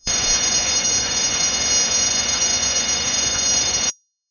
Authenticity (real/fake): fake